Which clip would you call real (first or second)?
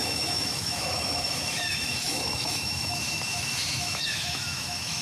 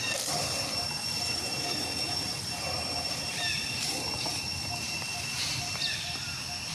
second